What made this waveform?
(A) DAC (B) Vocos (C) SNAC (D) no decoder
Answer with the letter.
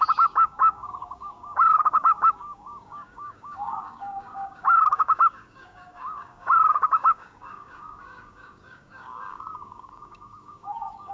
A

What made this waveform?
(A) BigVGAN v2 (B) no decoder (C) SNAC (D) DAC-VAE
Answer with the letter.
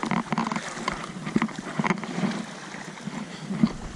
B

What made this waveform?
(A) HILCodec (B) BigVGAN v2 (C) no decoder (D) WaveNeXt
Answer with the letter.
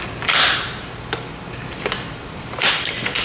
B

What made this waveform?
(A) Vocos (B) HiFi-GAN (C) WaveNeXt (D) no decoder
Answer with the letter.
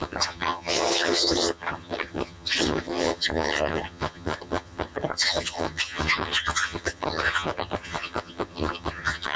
B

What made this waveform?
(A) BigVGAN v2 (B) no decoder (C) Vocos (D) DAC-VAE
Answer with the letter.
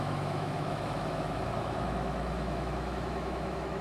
D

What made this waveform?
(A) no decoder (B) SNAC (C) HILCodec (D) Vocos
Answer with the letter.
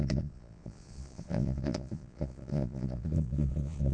D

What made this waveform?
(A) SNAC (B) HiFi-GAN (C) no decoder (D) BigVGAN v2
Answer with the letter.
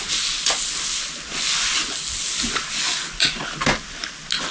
C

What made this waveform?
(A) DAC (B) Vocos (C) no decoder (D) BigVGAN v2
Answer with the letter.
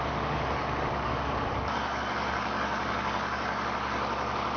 A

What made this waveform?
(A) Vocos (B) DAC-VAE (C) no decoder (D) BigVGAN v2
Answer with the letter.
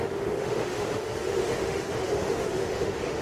B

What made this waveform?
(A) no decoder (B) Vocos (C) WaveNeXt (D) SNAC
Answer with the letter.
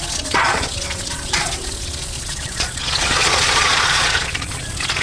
B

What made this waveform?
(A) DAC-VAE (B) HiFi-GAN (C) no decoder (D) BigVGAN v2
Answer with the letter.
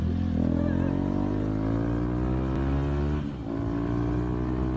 C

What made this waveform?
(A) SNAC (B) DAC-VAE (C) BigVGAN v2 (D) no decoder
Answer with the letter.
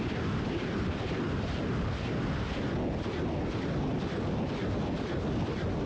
D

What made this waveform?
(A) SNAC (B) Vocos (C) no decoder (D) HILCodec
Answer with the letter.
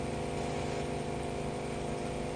C